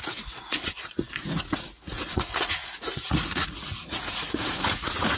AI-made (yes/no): yes